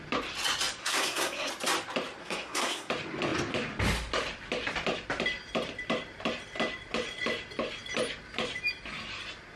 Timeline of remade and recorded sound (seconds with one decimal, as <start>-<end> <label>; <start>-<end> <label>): 0.0-0.8 recorded; 0.8-1.5 remade; 1.5-2.2 recorded; 2.2-2.9 remade; 2.9-9.6 recorded